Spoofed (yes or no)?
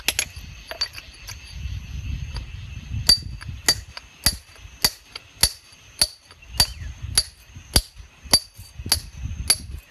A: no